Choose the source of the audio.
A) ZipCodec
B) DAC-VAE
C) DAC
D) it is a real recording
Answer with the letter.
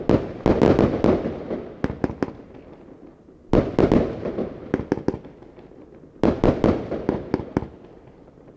D